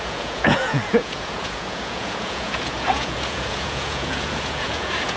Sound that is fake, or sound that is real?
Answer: fake